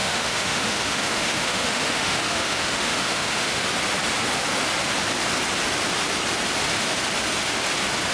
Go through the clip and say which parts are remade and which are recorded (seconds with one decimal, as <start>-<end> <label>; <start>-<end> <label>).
0.0-3.7 remade; 3.7-8.1 recorded